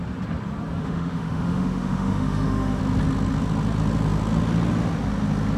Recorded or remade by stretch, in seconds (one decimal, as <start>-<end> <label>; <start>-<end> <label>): 0.0-0.8 recorded; 0.8-2.8 remade; 2.8-5.6 recorded